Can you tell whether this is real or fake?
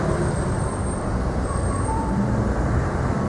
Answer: fake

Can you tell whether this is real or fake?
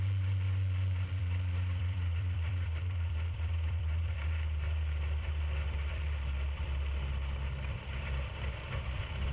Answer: fake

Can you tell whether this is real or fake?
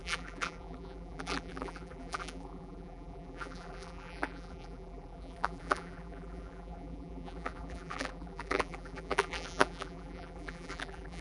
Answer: fake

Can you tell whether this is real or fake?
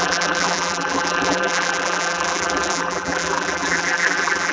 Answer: fake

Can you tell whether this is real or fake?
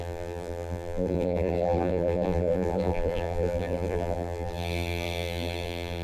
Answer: fake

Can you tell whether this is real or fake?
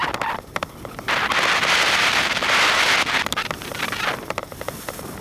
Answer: real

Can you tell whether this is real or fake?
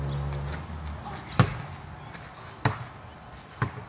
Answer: real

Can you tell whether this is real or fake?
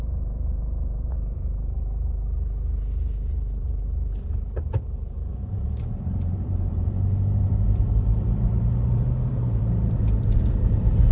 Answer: fake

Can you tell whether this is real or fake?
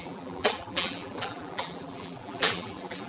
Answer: fake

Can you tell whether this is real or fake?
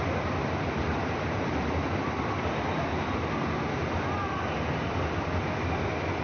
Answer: fake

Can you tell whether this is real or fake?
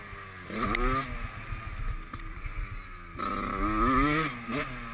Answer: real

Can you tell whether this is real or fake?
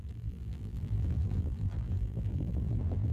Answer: fake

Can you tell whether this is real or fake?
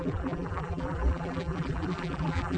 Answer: fake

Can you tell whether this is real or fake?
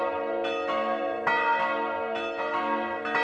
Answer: real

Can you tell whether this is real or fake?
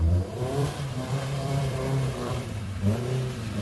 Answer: fake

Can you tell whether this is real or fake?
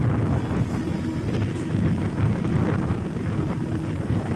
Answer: real